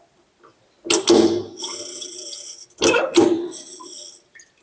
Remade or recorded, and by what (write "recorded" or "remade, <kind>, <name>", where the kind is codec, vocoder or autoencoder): recorded